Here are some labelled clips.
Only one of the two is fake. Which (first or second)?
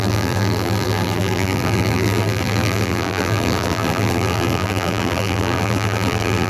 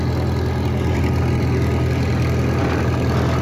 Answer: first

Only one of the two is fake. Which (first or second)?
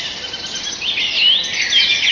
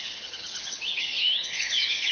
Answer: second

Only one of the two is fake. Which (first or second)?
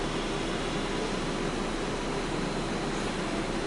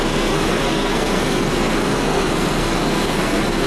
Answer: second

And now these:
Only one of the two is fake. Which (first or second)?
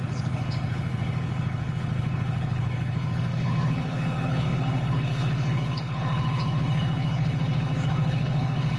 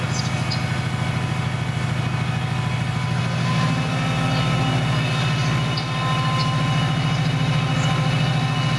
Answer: first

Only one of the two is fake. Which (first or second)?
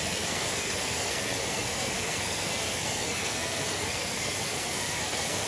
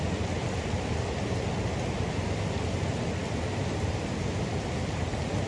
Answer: first